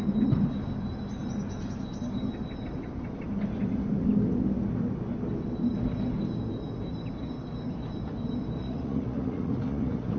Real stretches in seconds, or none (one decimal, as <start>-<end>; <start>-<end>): 0.0-8.6